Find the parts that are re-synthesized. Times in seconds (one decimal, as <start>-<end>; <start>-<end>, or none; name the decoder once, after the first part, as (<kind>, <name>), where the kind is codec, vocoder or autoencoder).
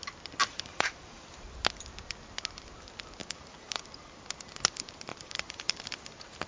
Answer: 0.4-1.4 (vocoder, BigVGAN v2); 3.2-3.8; 5.1-5.8